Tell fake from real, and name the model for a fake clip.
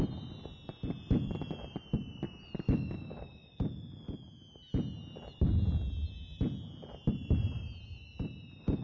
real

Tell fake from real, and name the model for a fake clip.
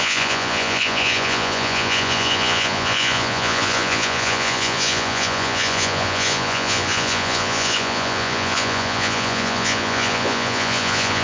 fake, vocoder, Vocos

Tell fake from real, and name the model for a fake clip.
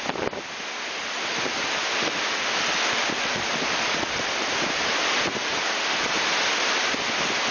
real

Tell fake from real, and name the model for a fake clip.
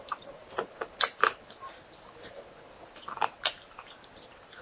fake, vocoder, BigVGAN v2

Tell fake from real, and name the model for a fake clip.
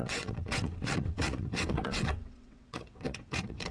fake, vocoder, WaveNeXt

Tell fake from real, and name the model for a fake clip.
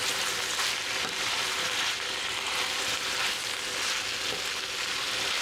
real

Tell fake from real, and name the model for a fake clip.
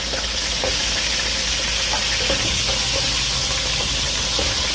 real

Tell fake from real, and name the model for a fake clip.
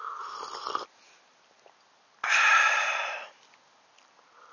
real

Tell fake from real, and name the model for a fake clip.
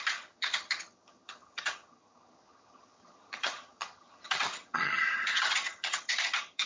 fake, vocoder, HiFi-GAN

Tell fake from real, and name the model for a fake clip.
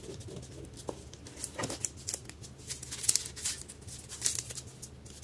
real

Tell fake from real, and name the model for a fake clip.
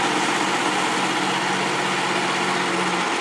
real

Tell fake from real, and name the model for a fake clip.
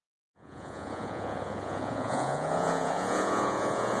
fake, vocoder, Vocos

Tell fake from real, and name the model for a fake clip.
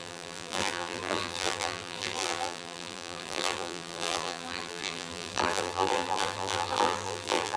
fake, vocoder, BigVGAN v2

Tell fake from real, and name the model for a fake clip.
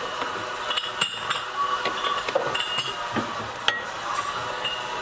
real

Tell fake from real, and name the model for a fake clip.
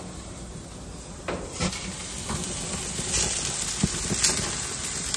real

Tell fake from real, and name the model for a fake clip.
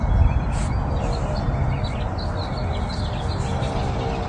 real